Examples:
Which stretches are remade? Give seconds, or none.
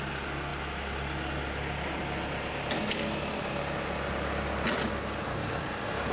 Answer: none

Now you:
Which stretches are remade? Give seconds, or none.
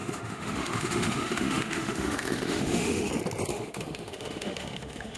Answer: 0.0-3.1; 3.5-5.2